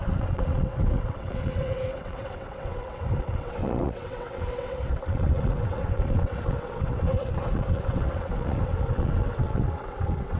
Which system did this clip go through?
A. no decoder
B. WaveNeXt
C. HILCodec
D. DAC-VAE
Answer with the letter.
B